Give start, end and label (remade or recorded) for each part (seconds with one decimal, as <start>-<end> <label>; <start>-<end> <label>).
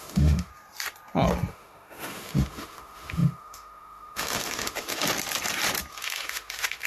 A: 0.0-0.5 remade; 0.5-1.5 recorded; 1.5-5.0 remade; 5.0-5.9 recorded; 5.9-6.9 remade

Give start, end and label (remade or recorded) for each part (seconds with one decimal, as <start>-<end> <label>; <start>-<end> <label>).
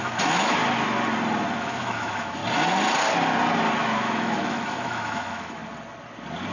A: 0.0-0.6 remade; 0.6-1.6 recorded; 1.6-2.4 remade; 2.4-3.8 recorded; 3.8-5.6 remade; 5.6-6.5 recorded